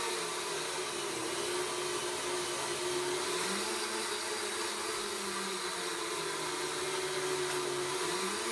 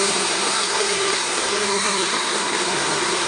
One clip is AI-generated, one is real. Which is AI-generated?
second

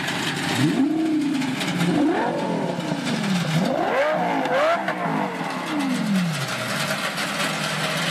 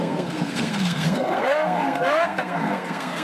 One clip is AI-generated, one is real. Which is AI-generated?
second